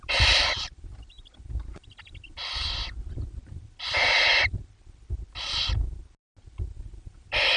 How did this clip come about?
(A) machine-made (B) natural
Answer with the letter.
B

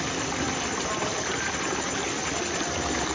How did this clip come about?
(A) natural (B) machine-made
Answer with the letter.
A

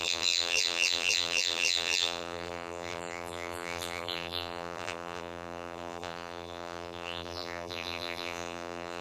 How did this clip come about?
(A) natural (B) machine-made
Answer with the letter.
B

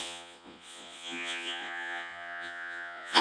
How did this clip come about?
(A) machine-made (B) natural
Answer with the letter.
A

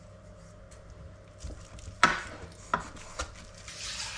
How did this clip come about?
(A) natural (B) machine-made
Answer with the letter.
A